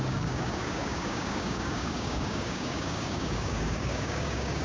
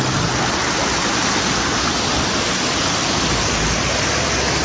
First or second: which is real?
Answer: second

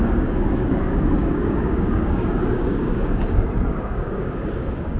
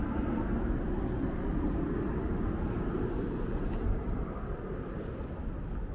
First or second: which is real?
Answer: second